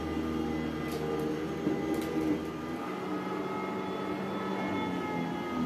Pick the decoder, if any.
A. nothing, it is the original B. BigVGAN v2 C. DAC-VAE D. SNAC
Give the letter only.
A